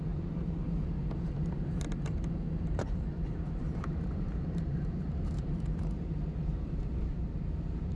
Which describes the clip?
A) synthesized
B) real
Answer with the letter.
A